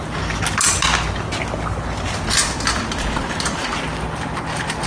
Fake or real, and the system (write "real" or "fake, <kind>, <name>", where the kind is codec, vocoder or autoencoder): real